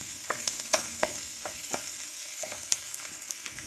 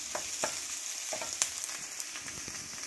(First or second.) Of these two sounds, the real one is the second